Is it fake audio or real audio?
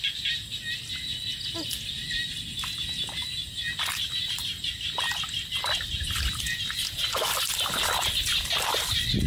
real